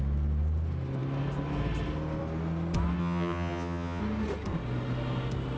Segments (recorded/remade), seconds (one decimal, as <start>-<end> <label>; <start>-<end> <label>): 0.0-3.0 recorded; 3.0-4.0 remade; 4.0-5.6 recorded